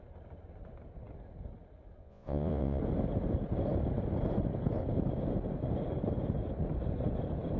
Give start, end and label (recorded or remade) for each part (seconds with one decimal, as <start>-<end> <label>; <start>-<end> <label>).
0.0-2.0 recorded; 2.0-2.8 remade; 2.8-7.6 recorded